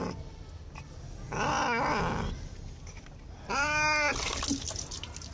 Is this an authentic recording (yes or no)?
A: yes